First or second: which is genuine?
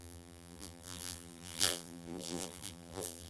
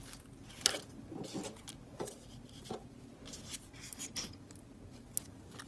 second